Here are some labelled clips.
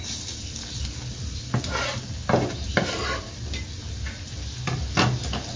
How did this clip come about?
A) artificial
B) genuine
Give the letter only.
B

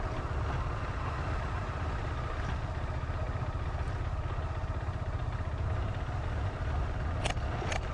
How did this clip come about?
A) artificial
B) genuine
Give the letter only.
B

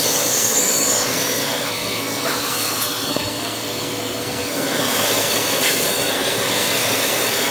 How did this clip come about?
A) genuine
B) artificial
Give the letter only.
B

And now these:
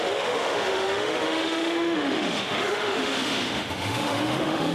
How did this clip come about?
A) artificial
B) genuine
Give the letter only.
A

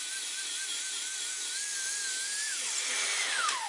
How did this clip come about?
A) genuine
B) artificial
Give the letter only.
A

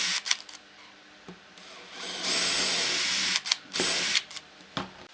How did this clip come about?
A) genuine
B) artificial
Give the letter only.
A